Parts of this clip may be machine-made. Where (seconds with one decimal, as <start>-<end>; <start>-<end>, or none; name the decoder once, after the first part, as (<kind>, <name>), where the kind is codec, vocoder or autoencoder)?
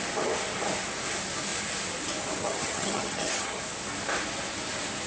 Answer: 2.4-3.6 (vocoder, HiFi-GAN)